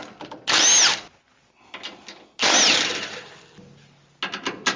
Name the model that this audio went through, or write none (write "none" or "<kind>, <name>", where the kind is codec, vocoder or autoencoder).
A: none